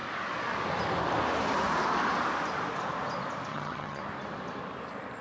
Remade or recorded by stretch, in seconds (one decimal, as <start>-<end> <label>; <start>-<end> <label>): 0.0-3.5 recorded; 3.5-4.0 remade; 4.0-5.2 recorded